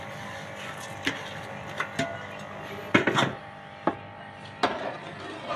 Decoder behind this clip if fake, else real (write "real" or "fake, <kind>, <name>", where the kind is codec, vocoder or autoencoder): real